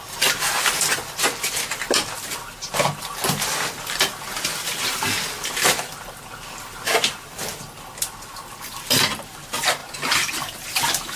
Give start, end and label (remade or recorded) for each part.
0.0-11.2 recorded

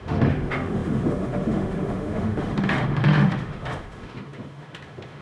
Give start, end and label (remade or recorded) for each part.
0.0-5.2 remade

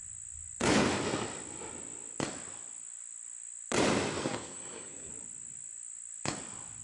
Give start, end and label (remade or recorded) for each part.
0.0-4.2 recorded; 4.2-5.1 remade; 5.1-6.8 recorded

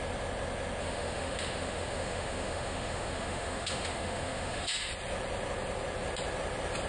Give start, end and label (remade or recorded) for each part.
0.0-0.8 recorded; 0.8-4.9 remade; 4.9-6.9 recorded

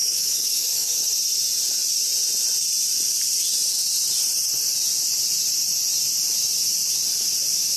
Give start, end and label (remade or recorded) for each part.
0.0-1.0 remade; 1.0-7.8 recorded

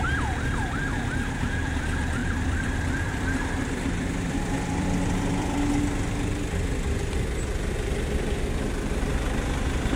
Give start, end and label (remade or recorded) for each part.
0.0-2.2 recorded; 2.2-5.8 remade; 5.8-10.0 recorded